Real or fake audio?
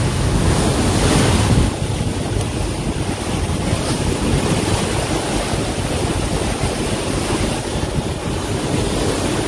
real